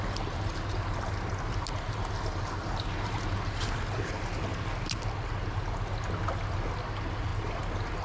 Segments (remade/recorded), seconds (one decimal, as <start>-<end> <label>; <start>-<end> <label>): 0.0-8.0 recorded